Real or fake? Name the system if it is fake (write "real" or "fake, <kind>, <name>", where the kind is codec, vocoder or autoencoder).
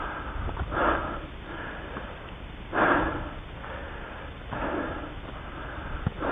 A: real